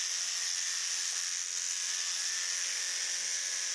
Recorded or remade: recorded